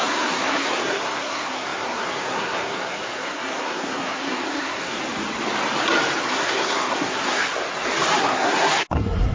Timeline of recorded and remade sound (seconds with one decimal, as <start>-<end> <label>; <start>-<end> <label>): 0.0-5.0 remade; 5.0-6.3 recorded; 6.3-7.4 remade; 7.4-8.2 recorded; 8.2-9.3 remade